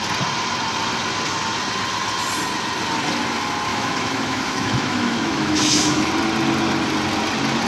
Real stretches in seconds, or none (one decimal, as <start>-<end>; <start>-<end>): 0.0-3.7; 6.1-7.7